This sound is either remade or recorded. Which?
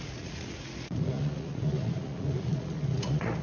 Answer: remade